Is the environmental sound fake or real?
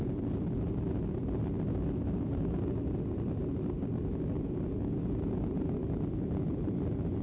real